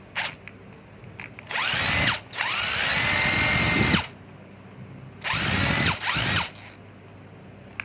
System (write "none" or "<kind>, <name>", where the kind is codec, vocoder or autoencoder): none